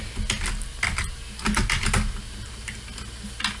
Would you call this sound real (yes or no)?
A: yes